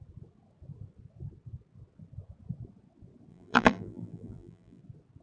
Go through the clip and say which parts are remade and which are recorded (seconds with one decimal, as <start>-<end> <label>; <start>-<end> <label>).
0.0-3.3 recorded; 3.3-4.8 remade; 4.8-5.2 recorded